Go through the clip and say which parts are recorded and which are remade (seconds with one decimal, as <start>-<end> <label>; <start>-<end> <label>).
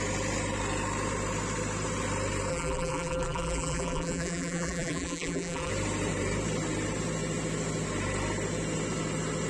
0.0-2.5 recorded; 2.5-5.7 remade; 5.7-9.5 recorded